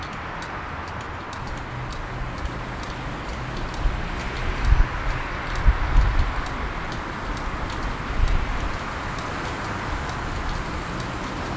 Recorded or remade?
recorded